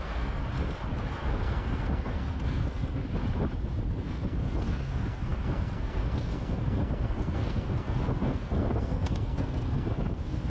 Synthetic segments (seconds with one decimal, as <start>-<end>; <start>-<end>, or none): 0.0-0.4; 1.1-3.0; 3.9-10.5